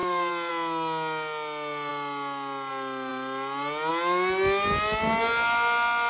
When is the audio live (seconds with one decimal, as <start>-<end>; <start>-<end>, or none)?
0.5-6.1